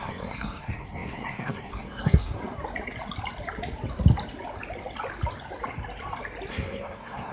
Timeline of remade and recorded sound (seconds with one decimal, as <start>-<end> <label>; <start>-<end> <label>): 0.0-2.4 remade; 2.4-6.5 recorded; 6.5-7.3 remade